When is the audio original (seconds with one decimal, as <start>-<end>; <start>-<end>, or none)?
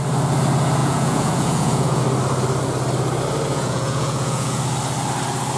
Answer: 0.0-0.8; 2.0-3.5; 4.6-5.6